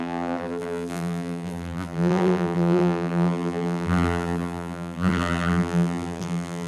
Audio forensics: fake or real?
fake